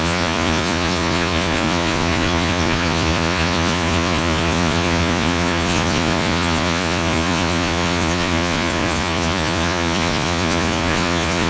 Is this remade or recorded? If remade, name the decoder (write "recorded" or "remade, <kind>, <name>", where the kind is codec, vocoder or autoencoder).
remade, vocoder, Vocos